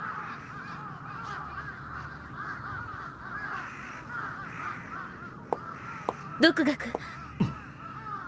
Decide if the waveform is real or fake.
real